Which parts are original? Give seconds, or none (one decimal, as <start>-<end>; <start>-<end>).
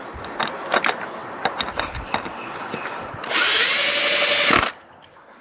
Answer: 0.0-5.4